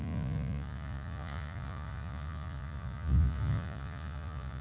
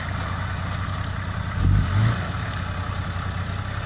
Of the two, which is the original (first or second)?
second